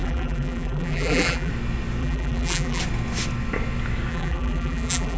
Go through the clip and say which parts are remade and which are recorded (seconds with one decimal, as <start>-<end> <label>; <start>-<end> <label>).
0.0-1.5 remade; 1.5-2.0 recorded; 2.0-2.8 remade; 2.8-4.1 recorded; 4.1-5.2 remade